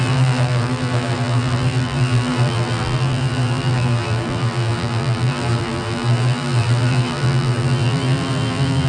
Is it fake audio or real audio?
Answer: fake